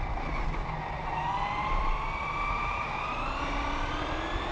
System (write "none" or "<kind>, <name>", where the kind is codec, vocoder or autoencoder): none